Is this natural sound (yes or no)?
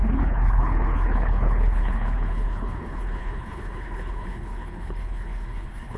no